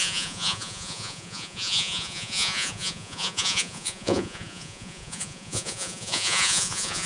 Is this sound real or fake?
fake